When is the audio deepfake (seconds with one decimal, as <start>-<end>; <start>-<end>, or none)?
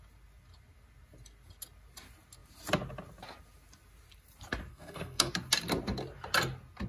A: 4.7-5.3